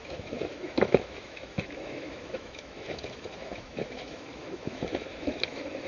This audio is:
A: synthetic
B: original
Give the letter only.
A